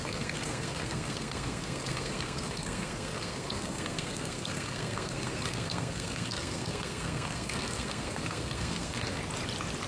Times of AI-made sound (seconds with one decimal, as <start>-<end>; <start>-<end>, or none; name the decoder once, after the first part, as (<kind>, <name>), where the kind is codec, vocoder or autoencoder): 0.0-9.2 (codec, SNAC)